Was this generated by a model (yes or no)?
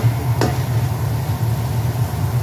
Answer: no